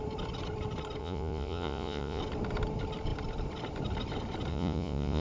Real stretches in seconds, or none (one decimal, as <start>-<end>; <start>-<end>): 0.0-1.0; 2.2-4.5